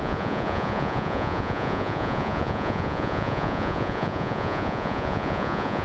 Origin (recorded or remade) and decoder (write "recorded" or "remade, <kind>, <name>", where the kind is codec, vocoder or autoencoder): remade, vocoder, Vocos